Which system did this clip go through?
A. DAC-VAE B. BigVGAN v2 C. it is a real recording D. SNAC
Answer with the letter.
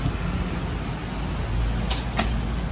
C